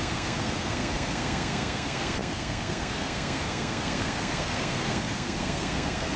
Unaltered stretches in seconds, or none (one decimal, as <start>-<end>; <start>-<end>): none